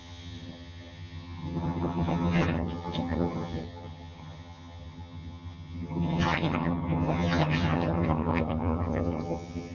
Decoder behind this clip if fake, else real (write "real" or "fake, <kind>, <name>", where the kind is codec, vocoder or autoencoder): fake, vocoder, HiFi-GAN